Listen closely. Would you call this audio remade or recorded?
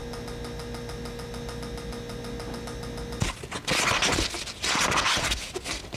recorded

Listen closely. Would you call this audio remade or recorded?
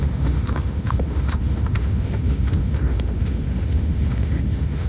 remade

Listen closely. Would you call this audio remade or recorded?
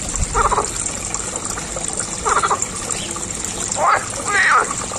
recorded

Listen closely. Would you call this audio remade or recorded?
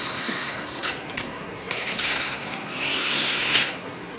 remade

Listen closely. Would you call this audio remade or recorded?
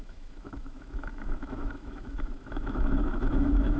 remade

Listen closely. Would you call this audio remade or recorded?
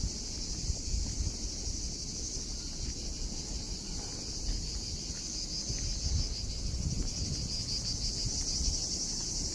recorded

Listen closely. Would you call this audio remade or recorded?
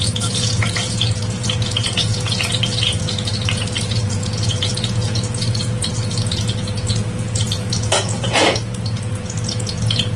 remade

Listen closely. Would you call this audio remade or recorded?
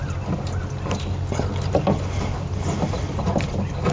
recorded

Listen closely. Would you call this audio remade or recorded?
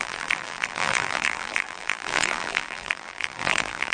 remade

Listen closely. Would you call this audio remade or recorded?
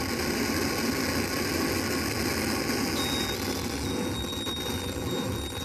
recorded